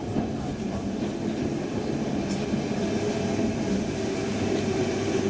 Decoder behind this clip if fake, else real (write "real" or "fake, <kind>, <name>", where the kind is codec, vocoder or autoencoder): real